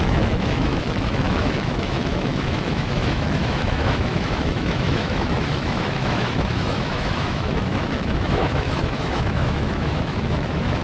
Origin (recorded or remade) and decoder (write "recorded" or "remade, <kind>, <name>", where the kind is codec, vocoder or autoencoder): remade, autoencoder, DAC-VAE